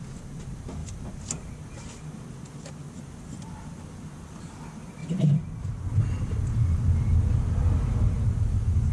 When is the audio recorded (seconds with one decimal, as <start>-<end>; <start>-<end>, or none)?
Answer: 0.0-8.9